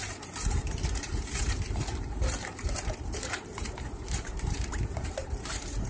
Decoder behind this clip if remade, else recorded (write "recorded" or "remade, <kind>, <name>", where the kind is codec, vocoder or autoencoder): remade, vocoder, BigVGAN v2